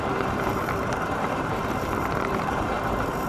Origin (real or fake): fake